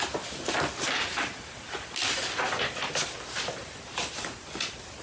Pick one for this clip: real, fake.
real